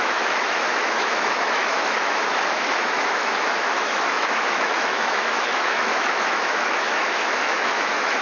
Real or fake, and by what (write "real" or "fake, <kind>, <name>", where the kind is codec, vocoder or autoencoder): fake, autoencoder, DAC-VAE